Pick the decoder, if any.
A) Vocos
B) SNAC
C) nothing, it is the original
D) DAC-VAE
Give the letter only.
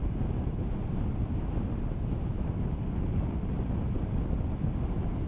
C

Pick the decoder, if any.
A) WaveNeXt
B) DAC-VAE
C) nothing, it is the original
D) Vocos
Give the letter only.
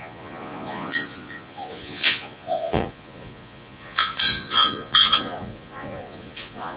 D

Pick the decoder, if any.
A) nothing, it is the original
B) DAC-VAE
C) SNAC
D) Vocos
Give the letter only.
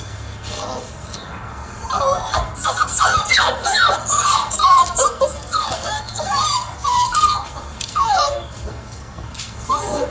C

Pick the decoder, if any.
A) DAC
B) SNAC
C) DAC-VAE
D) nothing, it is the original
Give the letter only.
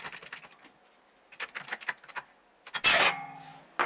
D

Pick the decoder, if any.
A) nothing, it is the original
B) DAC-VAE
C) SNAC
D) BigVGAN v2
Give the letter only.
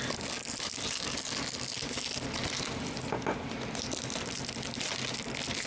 A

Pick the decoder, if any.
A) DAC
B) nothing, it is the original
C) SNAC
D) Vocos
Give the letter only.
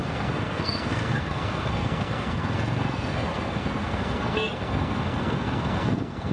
C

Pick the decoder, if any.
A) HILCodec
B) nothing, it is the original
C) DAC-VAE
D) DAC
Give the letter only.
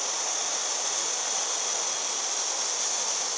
B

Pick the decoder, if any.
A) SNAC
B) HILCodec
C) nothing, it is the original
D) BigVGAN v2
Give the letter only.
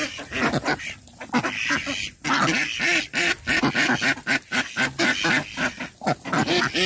C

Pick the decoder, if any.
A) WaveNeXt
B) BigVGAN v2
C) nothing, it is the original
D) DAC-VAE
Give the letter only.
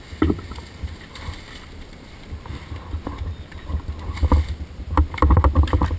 C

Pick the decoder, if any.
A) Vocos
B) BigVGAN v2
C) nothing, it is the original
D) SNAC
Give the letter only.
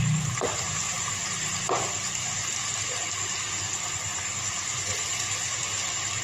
C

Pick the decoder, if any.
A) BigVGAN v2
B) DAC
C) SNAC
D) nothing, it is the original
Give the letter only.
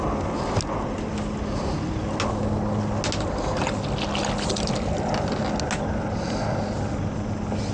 D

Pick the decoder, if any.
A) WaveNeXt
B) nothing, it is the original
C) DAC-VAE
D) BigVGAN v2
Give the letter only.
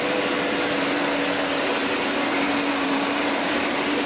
D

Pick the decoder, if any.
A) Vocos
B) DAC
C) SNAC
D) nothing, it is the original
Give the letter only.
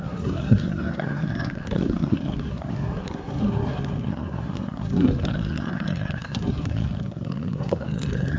C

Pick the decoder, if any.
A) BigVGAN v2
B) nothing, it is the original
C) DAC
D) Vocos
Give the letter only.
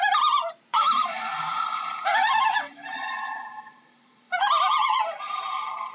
A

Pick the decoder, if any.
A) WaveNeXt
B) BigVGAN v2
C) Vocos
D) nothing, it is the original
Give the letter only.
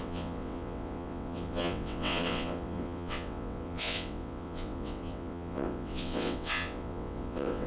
A